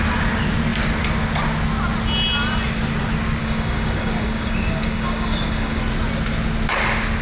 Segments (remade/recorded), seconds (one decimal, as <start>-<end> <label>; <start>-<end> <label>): 0.0-3.4 recorded; 3.4-5.8 remade; 5.8-7.2 recorded